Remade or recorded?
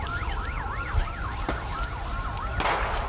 recorded